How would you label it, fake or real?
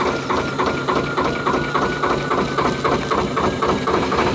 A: real